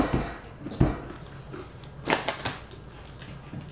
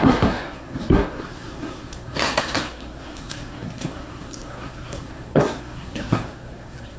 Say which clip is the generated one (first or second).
second